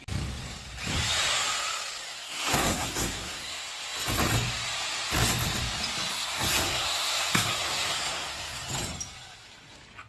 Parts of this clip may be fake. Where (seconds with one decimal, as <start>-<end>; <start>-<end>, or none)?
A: 2.1-3.6; 6.1-8.6